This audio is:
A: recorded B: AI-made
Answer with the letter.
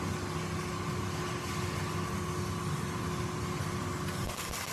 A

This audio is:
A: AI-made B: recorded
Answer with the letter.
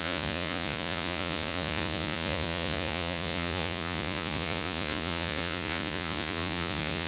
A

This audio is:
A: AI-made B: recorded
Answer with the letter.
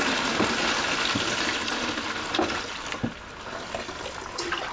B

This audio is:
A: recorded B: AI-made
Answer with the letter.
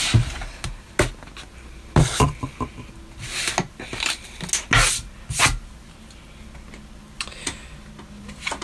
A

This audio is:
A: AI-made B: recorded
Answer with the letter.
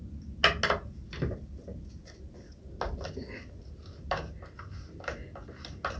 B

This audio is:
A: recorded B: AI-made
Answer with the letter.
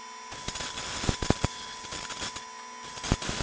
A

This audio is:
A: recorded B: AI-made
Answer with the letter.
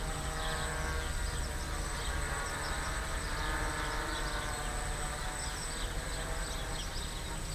A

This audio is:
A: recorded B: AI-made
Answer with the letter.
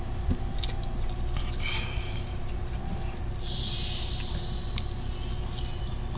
A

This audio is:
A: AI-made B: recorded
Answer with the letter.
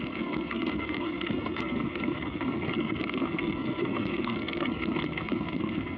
A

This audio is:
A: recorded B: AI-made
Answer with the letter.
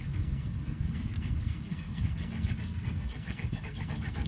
B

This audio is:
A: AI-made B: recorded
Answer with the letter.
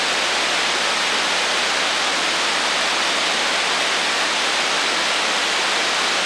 B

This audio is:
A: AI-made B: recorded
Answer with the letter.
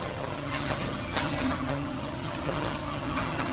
A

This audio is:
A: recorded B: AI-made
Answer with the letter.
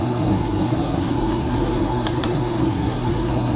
B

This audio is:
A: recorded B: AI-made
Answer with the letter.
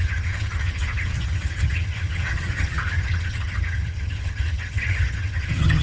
B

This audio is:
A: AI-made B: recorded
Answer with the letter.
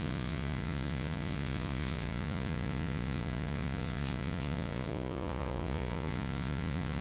A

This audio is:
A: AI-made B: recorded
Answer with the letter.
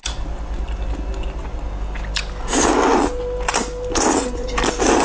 B